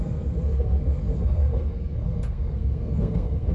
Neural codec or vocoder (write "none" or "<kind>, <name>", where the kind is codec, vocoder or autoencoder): codec, SNAC